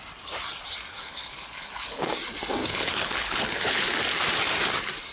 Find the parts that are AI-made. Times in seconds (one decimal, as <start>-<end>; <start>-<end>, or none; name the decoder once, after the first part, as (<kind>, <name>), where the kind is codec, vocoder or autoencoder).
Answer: 0.9-2.1 (codec, HILCodec); 2.6-3.9